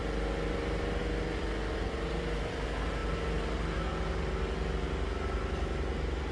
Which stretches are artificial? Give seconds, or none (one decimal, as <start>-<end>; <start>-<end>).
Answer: 0.5-3.0